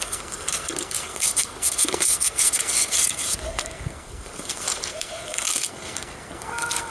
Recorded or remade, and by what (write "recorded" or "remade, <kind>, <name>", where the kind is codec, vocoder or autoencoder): remade, codec, SNAC